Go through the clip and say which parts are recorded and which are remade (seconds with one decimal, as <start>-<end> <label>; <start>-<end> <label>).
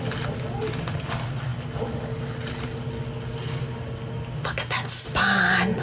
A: 0.0-5.8 recorded